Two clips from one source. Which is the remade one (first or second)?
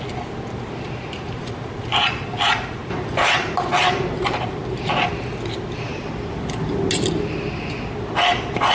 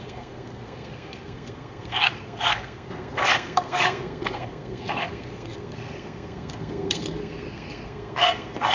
second